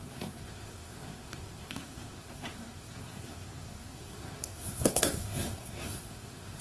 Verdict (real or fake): fake